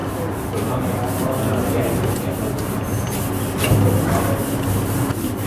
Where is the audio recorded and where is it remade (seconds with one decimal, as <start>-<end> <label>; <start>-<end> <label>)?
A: 0.0-5.5 recorded